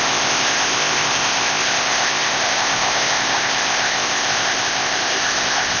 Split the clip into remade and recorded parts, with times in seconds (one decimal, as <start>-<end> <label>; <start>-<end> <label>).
0.0-5.8 remade

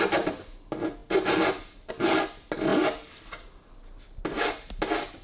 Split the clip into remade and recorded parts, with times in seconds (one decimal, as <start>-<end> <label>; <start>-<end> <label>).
0.0-5.2 recorded

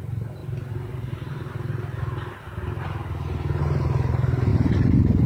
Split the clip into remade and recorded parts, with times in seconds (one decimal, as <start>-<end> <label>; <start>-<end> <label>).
0.0-4.5 recorded; 4.5-5.3 remade

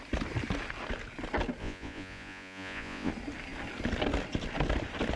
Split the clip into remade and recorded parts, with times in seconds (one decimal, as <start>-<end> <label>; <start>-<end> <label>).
0.0-1.6 recorded; 1.6-3.1 remade; 3.1-5.2 recorded

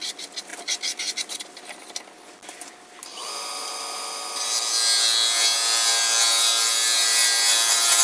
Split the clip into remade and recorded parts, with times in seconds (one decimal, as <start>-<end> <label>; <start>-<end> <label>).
0.0-8.0 recorded

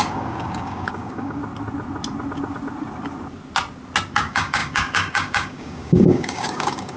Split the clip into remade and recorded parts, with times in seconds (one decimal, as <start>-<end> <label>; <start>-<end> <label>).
0.0-1.4 remade; 1.4-4.1 recorded; 4.1-7.0 remade